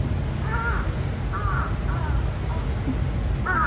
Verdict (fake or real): real